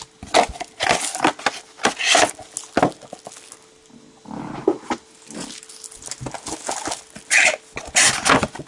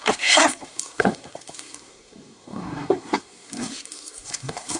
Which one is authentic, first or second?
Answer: first